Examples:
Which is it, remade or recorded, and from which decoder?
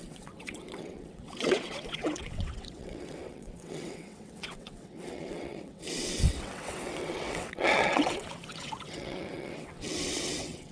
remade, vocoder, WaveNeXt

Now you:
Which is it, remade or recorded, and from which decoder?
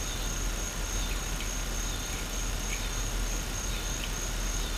recorded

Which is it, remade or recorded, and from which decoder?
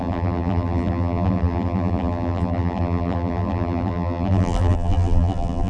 remade, vocoder, BigVGAN v2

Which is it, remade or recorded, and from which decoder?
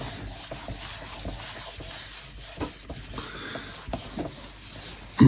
recorded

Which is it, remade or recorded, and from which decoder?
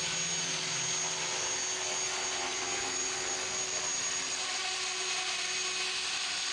recorded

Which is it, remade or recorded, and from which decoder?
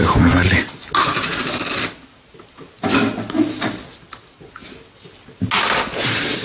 recorded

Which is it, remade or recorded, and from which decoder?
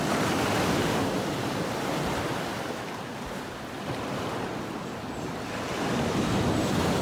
recorded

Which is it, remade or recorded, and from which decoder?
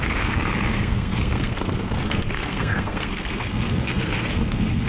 remade, codec, SNAC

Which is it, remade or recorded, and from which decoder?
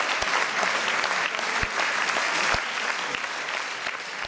recorded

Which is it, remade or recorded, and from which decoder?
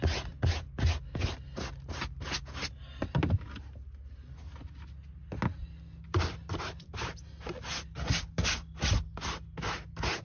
recorded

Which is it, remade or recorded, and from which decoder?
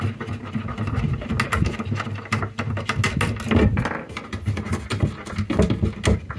recorded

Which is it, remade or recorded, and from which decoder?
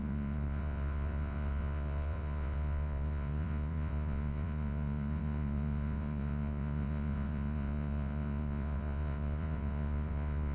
remade, vocoder, Vocos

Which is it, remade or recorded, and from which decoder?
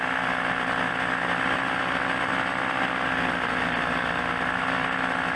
recorded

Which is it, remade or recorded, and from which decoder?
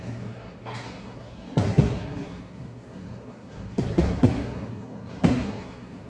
remade, codec, SNAC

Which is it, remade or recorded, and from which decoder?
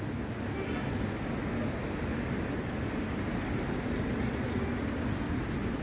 recorded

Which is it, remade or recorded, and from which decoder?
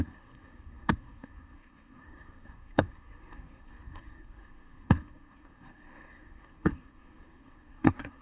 remade, codec, SNAC